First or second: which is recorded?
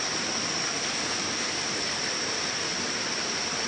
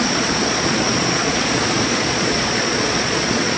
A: first